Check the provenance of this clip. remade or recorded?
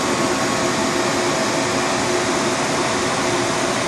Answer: recorded